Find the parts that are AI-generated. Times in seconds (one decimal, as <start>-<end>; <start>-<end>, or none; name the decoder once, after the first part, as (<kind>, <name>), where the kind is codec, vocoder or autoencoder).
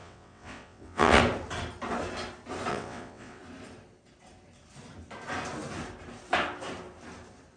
0.0-1.2 (vocoder, WaveNeXt); 2.7-3.4